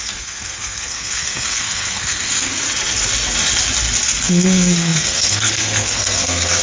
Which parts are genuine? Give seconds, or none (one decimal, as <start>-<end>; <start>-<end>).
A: 2.5-4.2